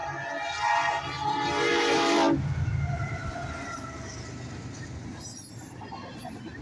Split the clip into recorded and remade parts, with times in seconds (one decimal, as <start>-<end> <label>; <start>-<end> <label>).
0.0-1.7 recorded; 1.7-5.7 remade; 5.7-6.6 recorded